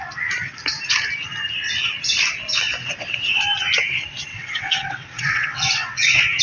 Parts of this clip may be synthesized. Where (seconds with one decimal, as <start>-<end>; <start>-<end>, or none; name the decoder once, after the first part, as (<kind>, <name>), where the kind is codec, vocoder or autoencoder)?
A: 2.8-3.4 (vocoder, WaveNeXt); 4.3-6.4

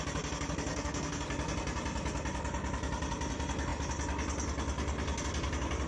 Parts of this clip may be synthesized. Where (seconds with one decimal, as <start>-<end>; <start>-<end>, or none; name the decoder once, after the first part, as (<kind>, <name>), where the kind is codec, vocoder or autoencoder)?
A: 0.7-1.2 (codec, SNAC)

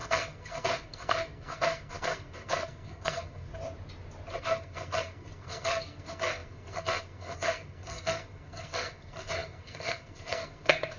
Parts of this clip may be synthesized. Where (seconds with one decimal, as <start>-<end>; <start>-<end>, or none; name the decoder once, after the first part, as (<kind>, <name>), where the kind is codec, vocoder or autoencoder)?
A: 0.0-3.5 (codec, SNAC); 4.4-11.0

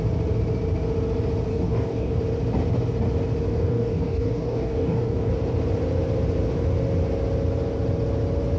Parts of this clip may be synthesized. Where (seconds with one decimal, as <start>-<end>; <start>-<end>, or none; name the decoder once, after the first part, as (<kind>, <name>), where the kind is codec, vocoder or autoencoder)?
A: 1.5-2.2 (codec, DAC); 3.5-5.3

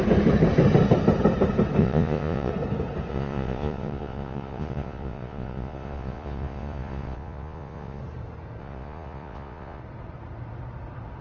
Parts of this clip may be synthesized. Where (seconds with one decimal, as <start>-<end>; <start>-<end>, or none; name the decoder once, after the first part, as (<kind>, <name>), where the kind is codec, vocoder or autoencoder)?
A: 1.8-2.5 (vocoder, Vocos); 3.1-8.0; 8.6-9.8